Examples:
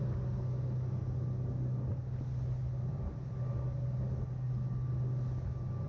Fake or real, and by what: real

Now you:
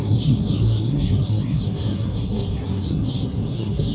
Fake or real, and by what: fake, codec, SNAC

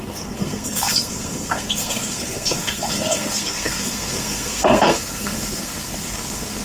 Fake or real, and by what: fake, codec, SNAC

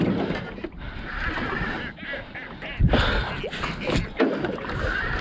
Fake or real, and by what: real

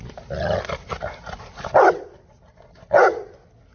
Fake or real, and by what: real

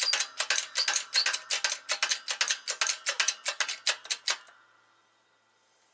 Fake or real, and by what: real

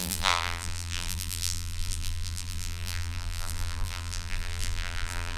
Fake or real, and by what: fake, vocoder, BigVGAN v2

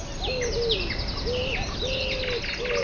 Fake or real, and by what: real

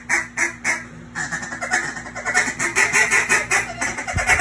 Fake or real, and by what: real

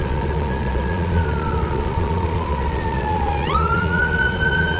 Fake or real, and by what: fake, vocoder, Vocos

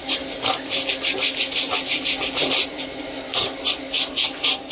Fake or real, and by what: fake, vocoder, BigVGAN v2